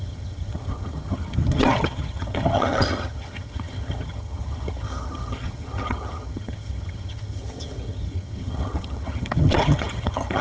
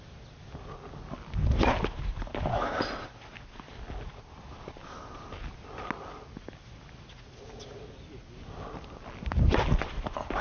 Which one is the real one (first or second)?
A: second